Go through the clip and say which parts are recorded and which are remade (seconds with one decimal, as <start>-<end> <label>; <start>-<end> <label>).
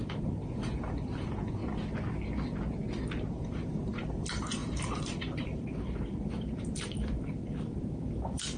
0.0-1.6 remade; 1.6-3.3 recorded; 3.3-8.6 remade